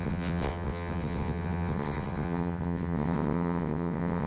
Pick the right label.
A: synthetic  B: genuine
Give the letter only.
A